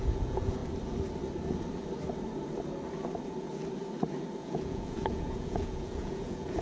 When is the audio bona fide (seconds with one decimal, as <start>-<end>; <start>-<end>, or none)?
0.6-4.4